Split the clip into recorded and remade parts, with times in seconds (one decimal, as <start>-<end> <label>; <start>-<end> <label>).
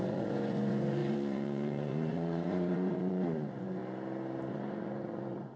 0.0-3.8 remade; 3.8-4.5 recorded; 4.5-5.6 remade